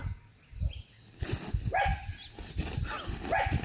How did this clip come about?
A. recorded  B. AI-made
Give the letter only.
A